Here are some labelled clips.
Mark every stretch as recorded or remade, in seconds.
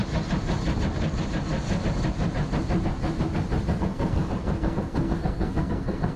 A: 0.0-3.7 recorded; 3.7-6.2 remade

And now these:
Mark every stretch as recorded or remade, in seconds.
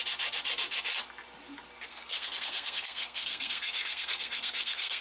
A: 0.0-1.9 recorded; 1.9-5.0 remade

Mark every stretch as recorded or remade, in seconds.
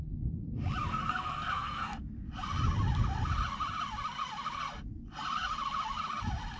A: 0.0-0.9 recorded; 0.9-2.2 remade; 2.2-6.6 recorded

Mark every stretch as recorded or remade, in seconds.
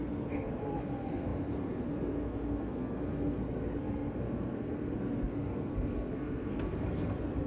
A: 0.0-7.5 remade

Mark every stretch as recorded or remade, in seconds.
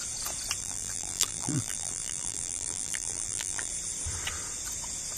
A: 0.0-0.6 recorded; 0.6-3.7 remade; 3.7-5.2 recorded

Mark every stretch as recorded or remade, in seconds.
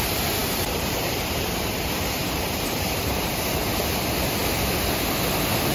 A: 0.0-0.4 recorded; 0.4-3.8 remade; 3.8-5.7 recorded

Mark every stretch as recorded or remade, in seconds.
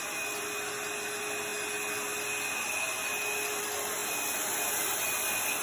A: 0.0-5.6 recorded